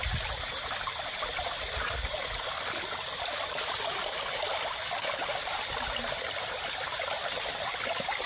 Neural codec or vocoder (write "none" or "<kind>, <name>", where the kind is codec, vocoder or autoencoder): none